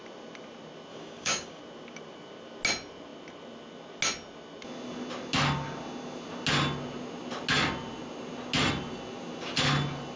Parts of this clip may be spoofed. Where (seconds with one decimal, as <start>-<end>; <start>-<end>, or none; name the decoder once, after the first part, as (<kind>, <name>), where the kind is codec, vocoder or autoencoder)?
0.9-1.6 (codec, DAC)